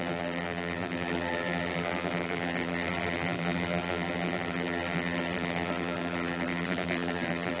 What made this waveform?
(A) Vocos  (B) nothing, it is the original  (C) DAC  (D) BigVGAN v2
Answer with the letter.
D